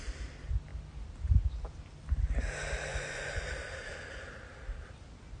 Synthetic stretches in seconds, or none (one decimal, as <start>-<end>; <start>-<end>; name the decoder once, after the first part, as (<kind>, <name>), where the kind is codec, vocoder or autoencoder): 2.9-3.4 (vocoder, Vocos)